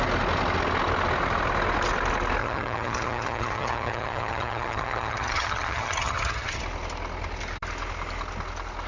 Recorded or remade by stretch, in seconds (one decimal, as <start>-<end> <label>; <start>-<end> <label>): 0.0-2.4 recorded; 2.4-6.6 remade; 6.6-8.9 recorded